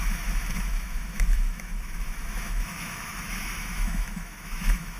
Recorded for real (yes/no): no